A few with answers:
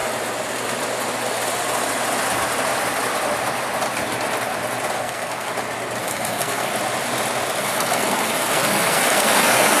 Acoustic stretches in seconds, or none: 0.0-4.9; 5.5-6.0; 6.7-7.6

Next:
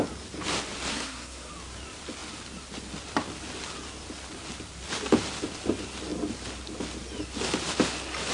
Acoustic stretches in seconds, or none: 0.0-0.9; 1.5-8.3

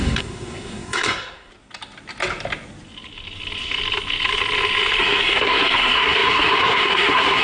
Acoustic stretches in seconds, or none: 1.5-5.0

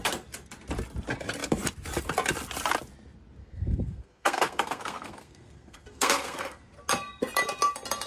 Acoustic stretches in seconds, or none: 0.0-3.4; 6.6-8.1

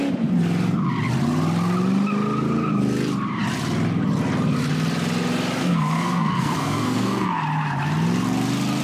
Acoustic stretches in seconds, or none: 0.0-5.6; 7.4-8.8